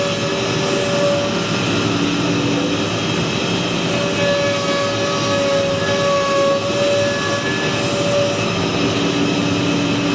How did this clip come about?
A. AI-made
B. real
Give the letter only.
B